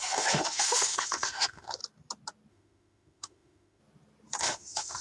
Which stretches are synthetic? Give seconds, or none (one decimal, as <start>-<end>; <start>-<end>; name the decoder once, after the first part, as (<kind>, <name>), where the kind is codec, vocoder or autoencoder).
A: 0.0-1.8 (autoencoder, DAC-VAE); 2.5-3.8; 4.4-5.0